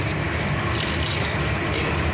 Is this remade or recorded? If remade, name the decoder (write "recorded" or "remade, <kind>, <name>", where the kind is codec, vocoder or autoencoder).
recorded